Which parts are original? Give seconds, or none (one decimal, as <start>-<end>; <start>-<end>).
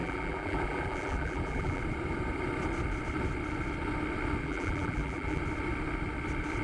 1.8-4.4; 5.4-6.6